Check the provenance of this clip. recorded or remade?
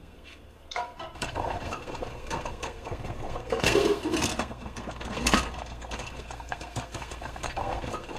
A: remade